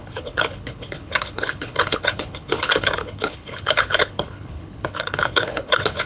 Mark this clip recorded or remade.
remade